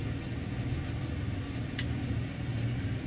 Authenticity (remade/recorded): recorded